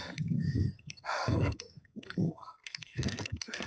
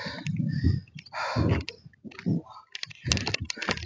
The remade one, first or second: first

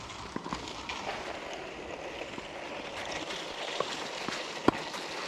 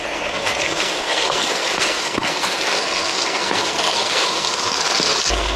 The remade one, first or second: second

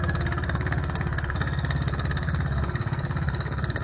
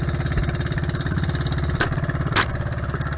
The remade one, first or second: first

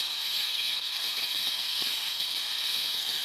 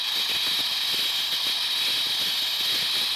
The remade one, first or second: first